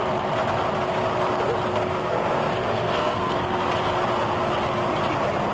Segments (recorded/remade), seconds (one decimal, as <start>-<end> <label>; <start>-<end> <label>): 0.0-1.7 recorded; 1.7-3.7 remade; 3.7-5.5 recorded